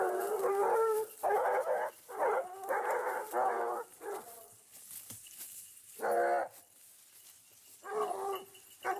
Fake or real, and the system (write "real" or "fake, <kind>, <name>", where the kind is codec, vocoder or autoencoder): real